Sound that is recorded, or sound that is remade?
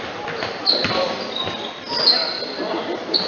recorded